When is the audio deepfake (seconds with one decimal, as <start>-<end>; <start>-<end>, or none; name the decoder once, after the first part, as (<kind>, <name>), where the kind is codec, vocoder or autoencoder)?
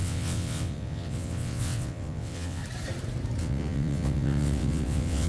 0.0-2.6 (vocoder, WaveNeXt); 3.4-5.3